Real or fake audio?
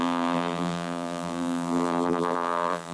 fake